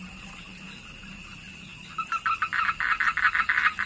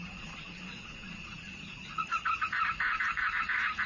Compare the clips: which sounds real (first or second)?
first